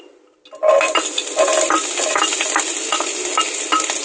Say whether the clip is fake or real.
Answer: real